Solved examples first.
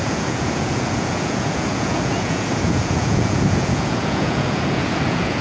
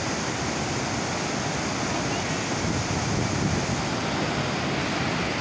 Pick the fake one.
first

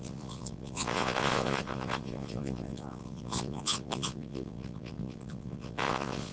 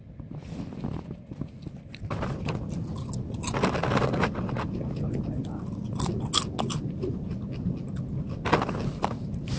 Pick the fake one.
first